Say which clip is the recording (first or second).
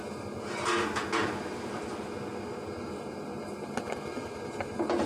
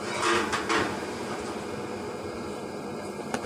first